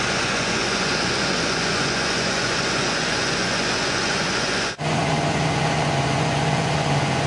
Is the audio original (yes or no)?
no